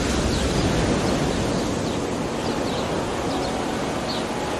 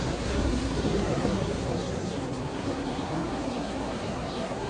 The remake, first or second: second